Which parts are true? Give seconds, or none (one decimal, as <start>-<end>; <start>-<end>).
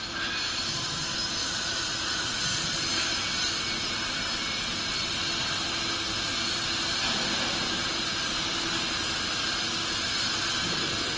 0.0-1.4; 2.4-11.2